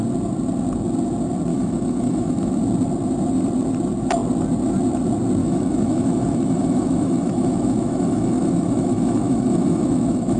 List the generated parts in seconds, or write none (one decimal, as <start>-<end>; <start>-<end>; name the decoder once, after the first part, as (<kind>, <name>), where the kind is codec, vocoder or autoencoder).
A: 1.5-2.5 (autoencoder, DAC-VAE); 5.4-10.4